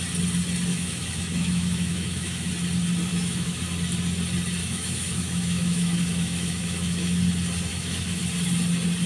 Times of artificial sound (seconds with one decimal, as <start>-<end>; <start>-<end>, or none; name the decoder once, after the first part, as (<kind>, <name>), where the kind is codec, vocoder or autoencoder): 0.7-2.5 (autoencoder, DAC-VAE); 3.1-3.6; 4.6-7.2; 7.7-8.2